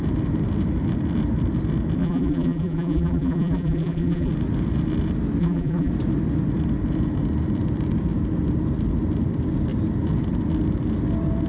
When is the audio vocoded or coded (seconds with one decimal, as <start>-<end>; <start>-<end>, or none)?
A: 2.0-4.3; 5.4-5.9

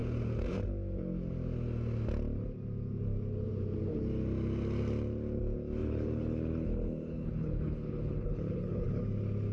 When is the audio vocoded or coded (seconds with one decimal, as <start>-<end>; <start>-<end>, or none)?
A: 5.8-9.0

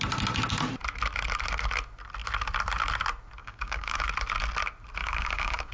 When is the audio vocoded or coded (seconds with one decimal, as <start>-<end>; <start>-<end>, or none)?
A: 3.4-4.1; 5.0-5.7

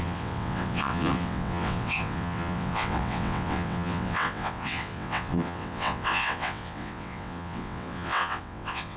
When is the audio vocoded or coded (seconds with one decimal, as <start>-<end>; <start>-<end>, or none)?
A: 0.0-9.0